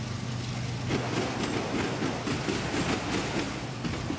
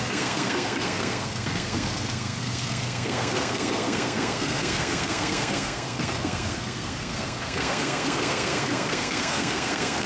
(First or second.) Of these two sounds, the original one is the first